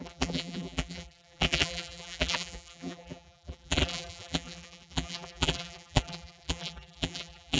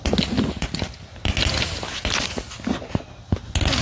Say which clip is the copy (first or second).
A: first